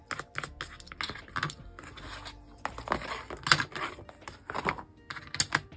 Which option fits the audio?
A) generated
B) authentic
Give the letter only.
B